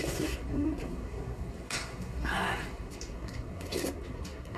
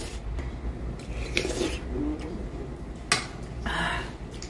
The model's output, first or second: first